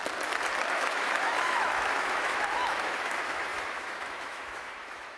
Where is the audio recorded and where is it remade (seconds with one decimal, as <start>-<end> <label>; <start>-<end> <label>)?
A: 0.0-0.7 recorded; 0.7-5.2 remade